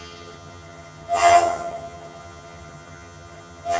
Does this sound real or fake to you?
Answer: fake